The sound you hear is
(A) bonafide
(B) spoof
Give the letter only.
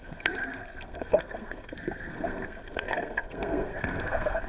B